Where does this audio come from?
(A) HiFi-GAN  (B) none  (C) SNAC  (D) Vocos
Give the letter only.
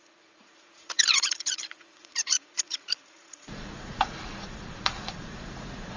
D